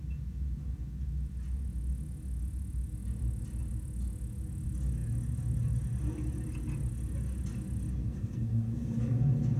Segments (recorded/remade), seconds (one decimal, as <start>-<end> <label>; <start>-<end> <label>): 0.0-8.0 recorded; 8.0-9.2 remade; 9.2-9.6 recorded